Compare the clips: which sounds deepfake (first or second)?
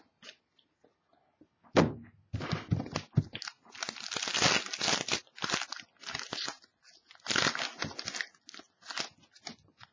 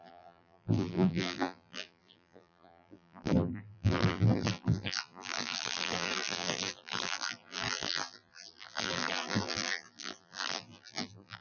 second